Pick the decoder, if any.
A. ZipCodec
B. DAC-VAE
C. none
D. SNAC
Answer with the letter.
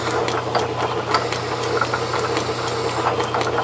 C